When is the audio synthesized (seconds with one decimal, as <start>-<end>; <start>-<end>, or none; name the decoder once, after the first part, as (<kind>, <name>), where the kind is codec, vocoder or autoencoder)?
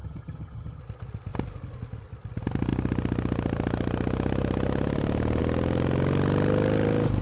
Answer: 0.0-0.8 (vocoder, HiFi-GAN)